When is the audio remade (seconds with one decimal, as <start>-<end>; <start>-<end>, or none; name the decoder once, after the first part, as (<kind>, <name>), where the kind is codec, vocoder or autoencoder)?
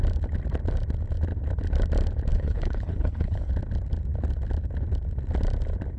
2.3-3.5 (codec, HILCodec)